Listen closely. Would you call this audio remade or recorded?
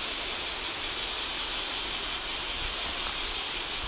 recorded